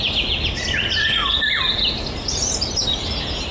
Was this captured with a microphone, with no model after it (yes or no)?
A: yes